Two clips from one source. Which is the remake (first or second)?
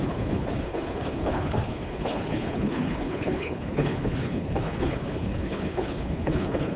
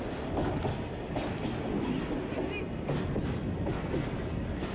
first